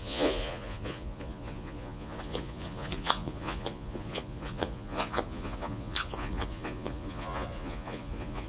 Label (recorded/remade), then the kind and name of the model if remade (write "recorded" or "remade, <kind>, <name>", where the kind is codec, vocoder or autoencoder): remade, vocoder, Vocos